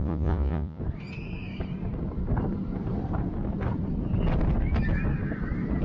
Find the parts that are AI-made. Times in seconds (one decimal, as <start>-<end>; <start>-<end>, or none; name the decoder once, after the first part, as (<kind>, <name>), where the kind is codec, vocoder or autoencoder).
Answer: 0.0-0.8 (vocoder, Vocos)